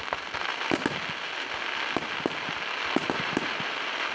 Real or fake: real